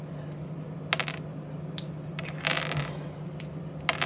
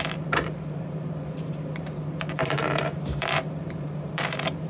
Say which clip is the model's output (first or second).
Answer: second